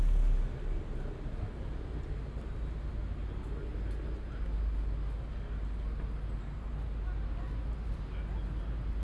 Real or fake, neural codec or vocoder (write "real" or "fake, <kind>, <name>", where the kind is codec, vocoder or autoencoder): real